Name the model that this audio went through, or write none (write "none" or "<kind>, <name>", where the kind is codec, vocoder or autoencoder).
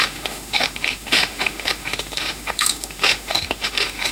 autoencoder, DAC-VAE